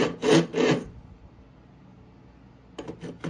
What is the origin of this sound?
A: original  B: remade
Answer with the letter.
A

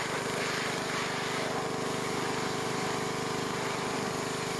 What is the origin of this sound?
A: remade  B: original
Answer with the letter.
B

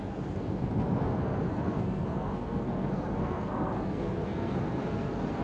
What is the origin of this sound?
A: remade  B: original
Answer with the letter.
A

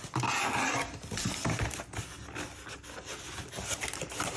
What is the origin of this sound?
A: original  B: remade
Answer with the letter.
A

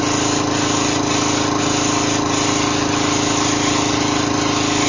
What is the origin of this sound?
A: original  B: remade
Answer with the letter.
A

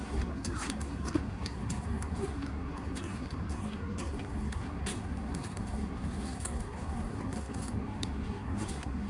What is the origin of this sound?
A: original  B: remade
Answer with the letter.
B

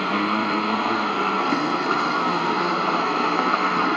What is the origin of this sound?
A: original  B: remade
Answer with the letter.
B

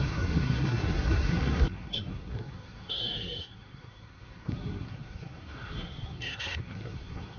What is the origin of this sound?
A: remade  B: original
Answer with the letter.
A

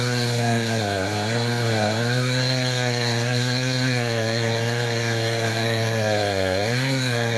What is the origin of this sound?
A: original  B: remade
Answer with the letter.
B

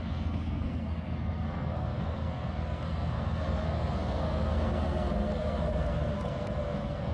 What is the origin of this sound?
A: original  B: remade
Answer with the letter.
B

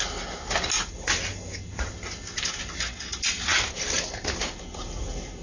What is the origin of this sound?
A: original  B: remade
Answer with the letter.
A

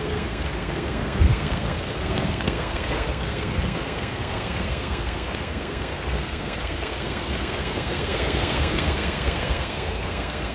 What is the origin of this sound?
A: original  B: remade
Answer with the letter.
B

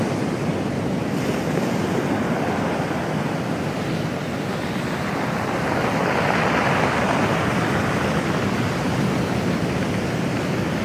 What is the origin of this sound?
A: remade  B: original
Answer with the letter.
B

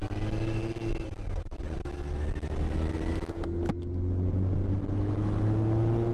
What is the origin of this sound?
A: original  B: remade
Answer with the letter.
A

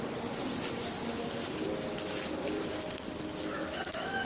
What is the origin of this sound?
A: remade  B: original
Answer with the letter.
B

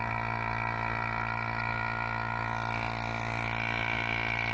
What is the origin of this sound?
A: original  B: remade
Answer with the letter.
A